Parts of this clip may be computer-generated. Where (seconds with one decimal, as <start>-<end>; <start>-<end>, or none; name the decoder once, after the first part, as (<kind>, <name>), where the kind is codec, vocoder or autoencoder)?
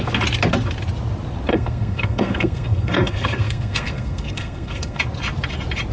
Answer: 1.5-5.0 (codec, SNAC)